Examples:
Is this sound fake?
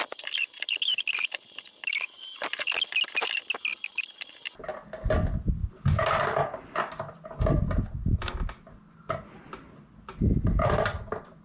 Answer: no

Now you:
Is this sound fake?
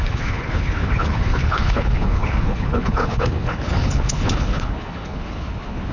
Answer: yes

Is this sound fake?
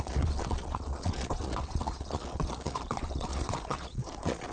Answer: yes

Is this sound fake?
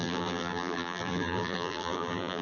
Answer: yes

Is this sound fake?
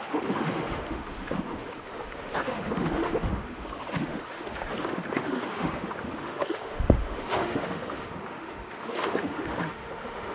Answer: yes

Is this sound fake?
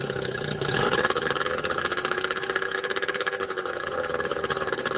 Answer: yes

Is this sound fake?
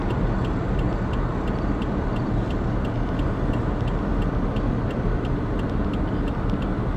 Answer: no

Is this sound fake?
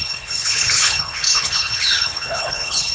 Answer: yes